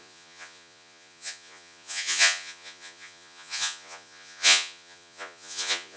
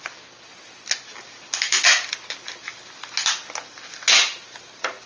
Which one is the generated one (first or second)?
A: first